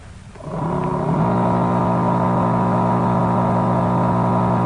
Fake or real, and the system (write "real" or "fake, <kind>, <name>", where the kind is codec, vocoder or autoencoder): real